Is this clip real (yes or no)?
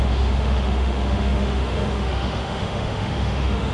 no